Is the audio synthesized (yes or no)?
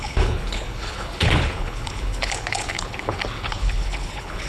yes